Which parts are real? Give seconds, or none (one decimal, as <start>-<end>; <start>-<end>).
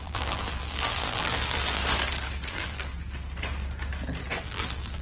1.8-2.5; 2.9-4.4